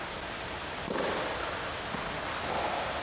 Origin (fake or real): real